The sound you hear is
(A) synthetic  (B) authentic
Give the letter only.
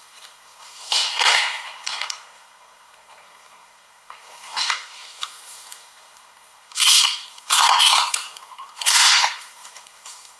A